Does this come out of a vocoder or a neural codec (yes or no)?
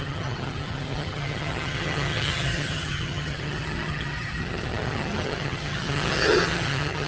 yes